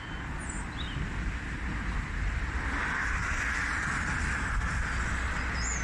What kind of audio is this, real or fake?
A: real